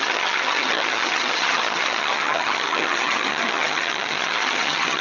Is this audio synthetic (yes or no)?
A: yes